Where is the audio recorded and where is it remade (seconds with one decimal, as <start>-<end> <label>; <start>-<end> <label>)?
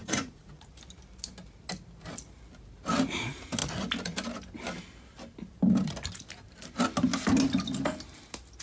0.0-0.7 remade; 0.7-8.6 recorded